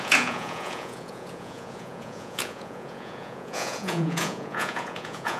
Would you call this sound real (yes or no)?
no